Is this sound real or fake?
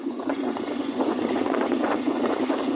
fake